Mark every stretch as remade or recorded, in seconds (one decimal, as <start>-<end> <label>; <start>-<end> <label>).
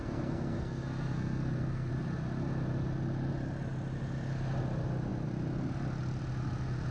0.0-1.9 remade; 1.9-6.9 recorded